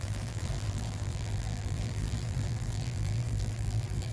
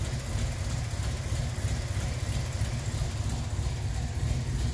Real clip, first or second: second